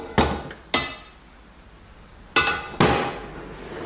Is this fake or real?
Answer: real